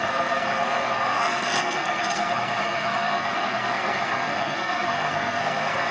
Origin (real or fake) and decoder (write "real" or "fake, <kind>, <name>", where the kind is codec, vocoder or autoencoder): fake, codec, SNAC